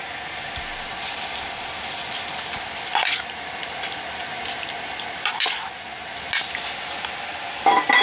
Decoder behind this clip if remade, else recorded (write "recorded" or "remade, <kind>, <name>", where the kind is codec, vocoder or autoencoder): recorded